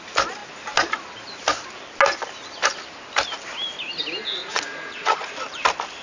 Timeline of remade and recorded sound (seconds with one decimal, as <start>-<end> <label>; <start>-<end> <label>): 0.0-4.4 recorded; 4.4-5.3 remade; 5.3-6.0 recorded